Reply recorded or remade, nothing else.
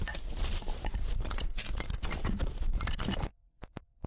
remade